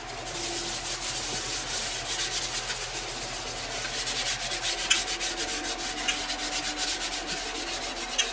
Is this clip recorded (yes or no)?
yes